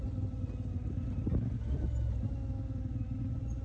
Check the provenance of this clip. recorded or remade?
recorded